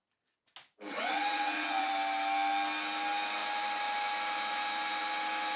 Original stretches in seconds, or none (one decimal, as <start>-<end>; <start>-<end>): 0.0-0.9; 1.9-5.6